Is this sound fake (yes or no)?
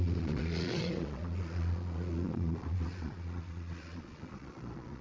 yes